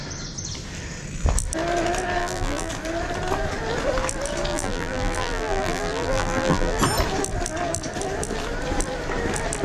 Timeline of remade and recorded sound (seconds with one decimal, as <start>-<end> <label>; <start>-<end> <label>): 0.0-2.2 recorded; 2.2-2.7 remade; 2.7-4.5 recorded; 4.5-6.8 remade; 6.8-9.6 recorded